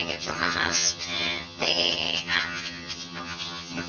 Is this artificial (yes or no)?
yes